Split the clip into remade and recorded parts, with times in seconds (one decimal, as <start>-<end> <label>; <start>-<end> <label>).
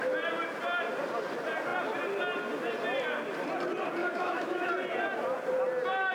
0.0-4.0 recorded; 4.0-4.7 remade; 4.7-6.1 recorded